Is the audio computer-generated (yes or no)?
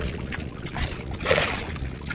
yes